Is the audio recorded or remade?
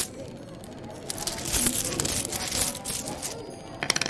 remade